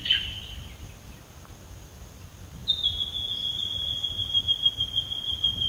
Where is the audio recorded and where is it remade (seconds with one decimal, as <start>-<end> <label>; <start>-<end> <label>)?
0.0-1.2 remade; 1.2-5.7 recorded